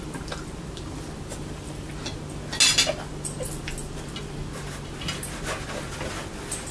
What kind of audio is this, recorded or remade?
recorded